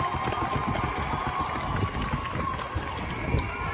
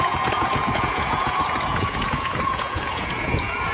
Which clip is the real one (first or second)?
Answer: first